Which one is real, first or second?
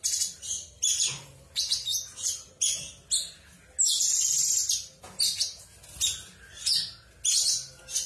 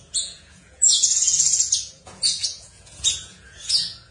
first